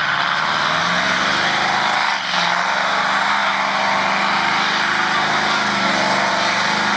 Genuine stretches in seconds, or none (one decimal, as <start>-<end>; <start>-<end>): 0.0-7.0